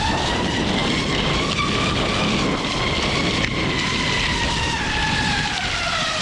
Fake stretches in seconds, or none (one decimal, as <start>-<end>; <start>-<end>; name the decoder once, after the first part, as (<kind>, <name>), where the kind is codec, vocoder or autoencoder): 0.0-0.8 (vocoder, BigVGAN v2); 4.5-6.2